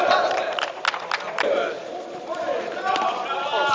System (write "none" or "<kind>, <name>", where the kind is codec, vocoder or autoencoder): none